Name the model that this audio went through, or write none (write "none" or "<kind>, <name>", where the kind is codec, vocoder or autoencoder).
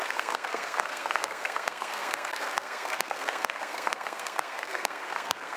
codec, SNAC